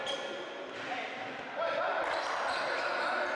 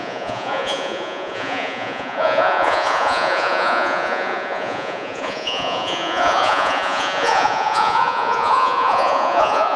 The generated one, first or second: second